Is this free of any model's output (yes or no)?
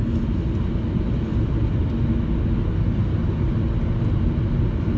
yes